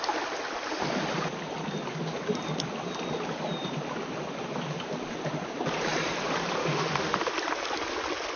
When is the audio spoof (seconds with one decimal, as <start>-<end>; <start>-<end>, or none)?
6.6-7.3